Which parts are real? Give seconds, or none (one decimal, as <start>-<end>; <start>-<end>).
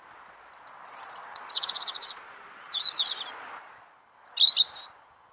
0.0-1.3; 3.2-5.3